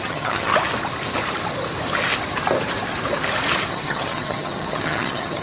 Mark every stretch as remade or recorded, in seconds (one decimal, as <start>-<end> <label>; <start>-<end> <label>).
0.0-0.5 remade; 0.5-3.7 recorded; 3.7-5.4 remade